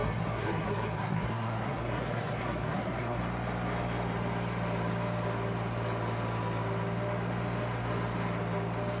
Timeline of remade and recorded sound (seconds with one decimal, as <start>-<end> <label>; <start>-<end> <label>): 0.0-3.2 remade; 3.2-9.0 recorded